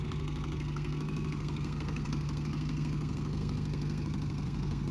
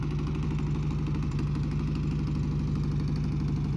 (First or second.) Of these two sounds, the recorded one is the second